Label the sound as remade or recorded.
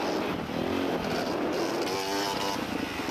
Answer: recorded